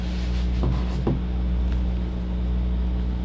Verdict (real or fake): real